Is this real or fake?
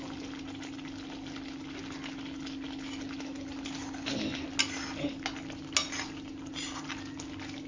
real